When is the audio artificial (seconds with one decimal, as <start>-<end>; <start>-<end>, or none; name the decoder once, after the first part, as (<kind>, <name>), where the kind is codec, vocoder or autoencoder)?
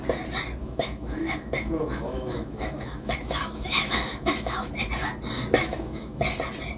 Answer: 0.6-4.7 (autoencoder, DAC-VAE); 5.6-6.2